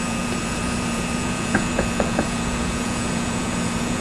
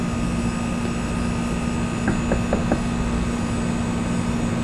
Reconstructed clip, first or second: first